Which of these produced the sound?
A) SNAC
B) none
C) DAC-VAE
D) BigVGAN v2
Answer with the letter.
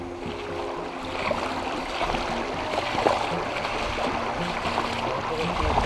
B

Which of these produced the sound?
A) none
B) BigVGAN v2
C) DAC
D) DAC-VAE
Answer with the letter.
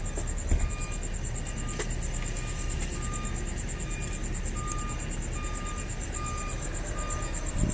A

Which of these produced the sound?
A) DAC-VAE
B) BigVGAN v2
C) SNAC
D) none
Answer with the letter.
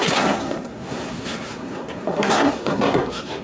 C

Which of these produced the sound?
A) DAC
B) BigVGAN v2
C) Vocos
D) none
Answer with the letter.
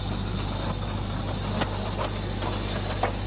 D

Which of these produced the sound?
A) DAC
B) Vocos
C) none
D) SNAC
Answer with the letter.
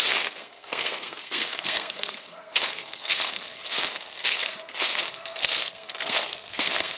D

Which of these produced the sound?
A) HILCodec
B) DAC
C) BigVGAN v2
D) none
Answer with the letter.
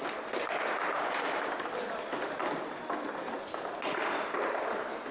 D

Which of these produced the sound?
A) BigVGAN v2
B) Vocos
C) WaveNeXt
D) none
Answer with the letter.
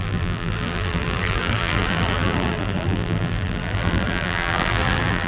A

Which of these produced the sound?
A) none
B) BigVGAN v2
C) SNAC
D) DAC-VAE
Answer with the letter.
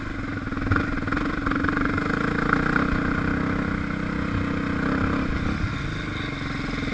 A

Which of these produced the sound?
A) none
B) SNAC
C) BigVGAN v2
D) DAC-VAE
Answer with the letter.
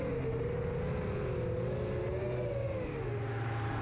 A